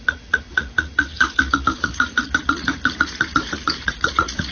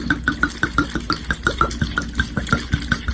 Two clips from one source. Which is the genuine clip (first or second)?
second